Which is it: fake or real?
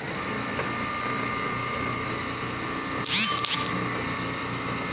real